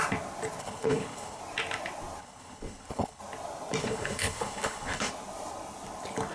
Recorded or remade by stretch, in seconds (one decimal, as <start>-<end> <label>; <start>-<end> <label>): 0.0-0.6 recorded; 0.6-1.4 remade; 1.4-2.2 recorded; 2.2-3.2 remade; 3.2-3.8 recorded; 3.8-5.1 remade; 5.1-6.3 recorded